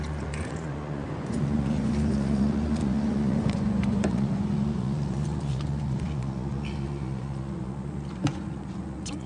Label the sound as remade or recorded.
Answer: remade